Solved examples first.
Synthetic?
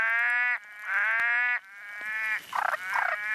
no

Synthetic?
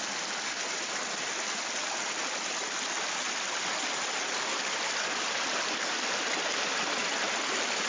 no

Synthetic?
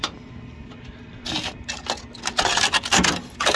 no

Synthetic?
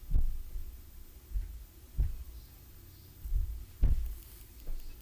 no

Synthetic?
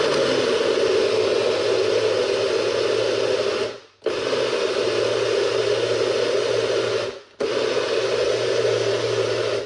no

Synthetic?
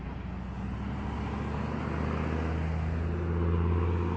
no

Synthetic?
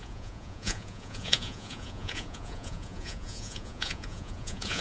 yes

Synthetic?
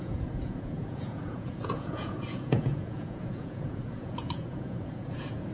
yes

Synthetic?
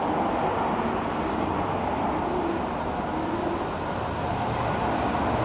no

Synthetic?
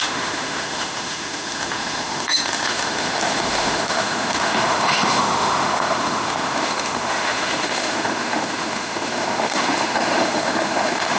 yes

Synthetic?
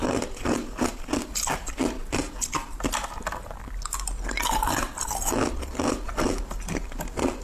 no